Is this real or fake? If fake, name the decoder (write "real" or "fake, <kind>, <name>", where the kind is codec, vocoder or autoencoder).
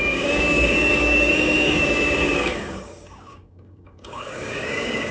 fake, codec, DAC